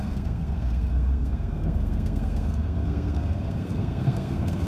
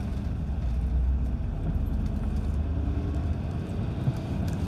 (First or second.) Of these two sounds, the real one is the second